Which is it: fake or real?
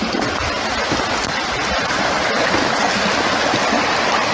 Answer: real